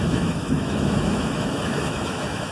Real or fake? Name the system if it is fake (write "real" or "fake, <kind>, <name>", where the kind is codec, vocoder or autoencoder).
fake, autoencoder, DAC-VAE